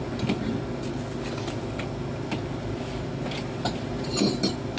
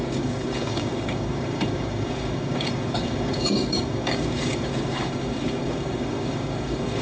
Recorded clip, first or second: first